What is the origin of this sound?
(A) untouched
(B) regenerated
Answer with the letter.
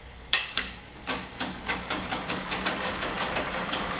B